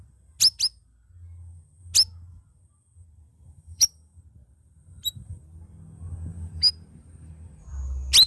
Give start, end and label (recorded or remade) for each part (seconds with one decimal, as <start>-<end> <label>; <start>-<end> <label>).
0.0-3.3 recorded; 3.3-5.6 remade; 5.6-6.3 recorded; 6.3-7.3 remade; 7.3-8.3 recorded